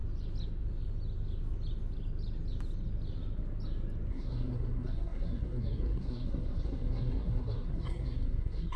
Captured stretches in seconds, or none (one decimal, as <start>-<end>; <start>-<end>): 0.0-4.1